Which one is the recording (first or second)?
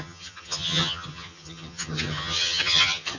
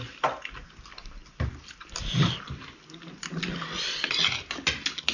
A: second